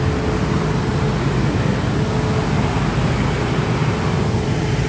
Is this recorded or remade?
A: recorded